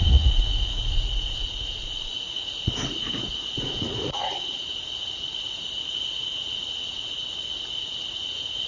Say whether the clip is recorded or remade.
remade